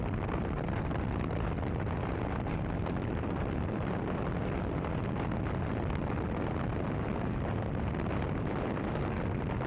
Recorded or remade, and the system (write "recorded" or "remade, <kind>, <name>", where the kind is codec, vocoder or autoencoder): recorded